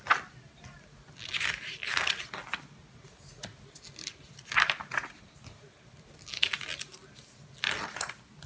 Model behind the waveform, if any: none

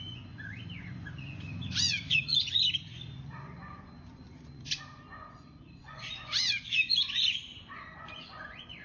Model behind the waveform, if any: vocoder, Vocos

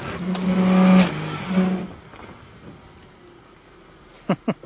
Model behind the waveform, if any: none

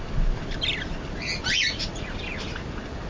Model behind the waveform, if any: none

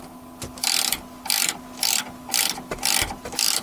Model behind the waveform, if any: none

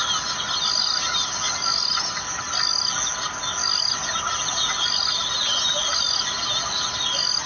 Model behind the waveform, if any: none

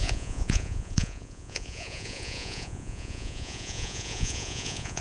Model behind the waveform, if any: vocoder, Vocos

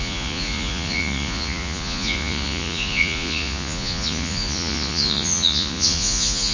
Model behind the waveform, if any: vocoder, Vocos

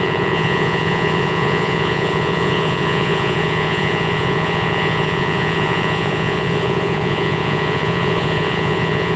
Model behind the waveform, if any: vocoder, Vocos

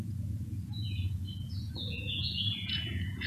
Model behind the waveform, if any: vocoder, Vocos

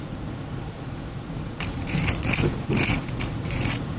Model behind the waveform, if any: vocoder, Vocos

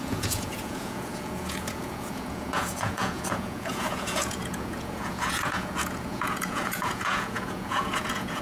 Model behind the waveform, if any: vocoder, Vocos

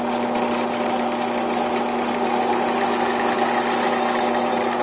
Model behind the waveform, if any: none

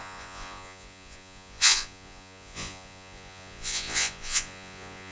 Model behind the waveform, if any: vocoder, Vocos